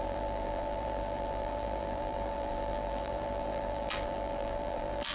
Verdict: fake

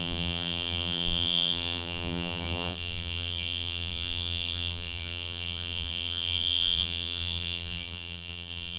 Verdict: fake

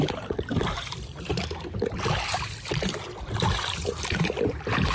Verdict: fake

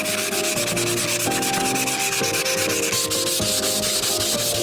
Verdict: real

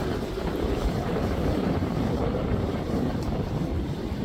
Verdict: fake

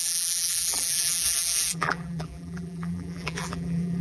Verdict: fake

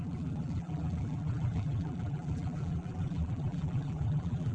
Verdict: fake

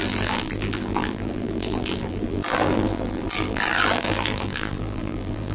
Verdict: fake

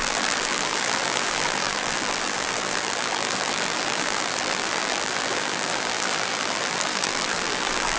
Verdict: fake